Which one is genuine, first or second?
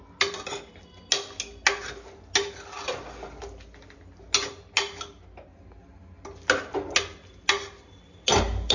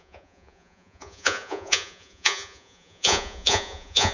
first